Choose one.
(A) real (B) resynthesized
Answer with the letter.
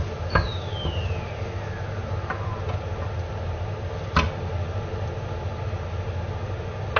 A